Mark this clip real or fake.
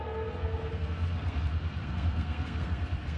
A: fake